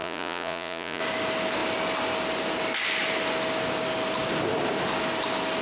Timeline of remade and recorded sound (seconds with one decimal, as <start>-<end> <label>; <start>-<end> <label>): 0.0-1.0 remade; 1.0-5.6 recorded